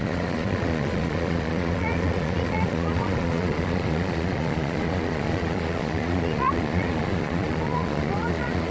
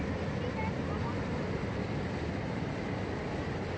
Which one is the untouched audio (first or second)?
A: second